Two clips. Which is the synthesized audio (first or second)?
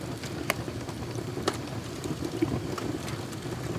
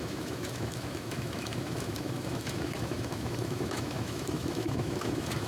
second